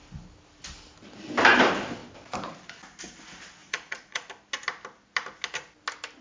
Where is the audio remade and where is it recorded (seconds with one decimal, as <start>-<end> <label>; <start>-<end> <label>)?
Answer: 0.0-3.6 recorded; 3.6-4.3 remade; 4.3-6.2 recorded

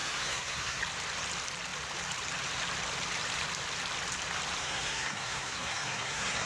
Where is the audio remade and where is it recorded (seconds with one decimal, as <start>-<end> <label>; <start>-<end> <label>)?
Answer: 0.0-0.8 remade; 0.8-4.6 recorded; 4.6-6.5 remade

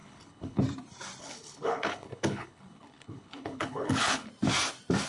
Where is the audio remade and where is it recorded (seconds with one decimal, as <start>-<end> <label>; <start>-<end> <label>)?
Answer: 0.0-0.6 remade; 0.6-1.2 recorded; 1.2-4.3 remade; 4.3-5.1 recorded

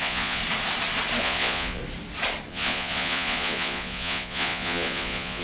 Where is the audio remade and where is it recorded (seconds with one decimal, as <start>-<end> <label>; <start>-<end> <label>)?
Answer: 0.0-0.4 remade; 0.4-1.2 recorded; 1.2-1.8 remade; 1.8-2.5 recorded; 2.5-5.4 remade

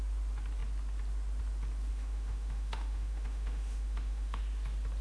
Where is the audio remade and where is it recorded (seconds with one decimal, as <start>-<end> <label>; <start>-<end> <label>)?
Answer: 0.0-1.9 recorded; 1.9-4.4 remade; 4.4-5.0 recorded